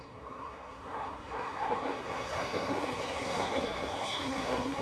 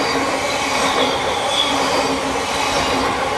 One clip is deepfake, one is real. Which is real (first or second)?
second